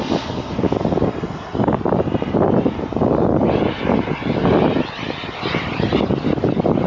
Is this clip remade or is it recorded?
recorded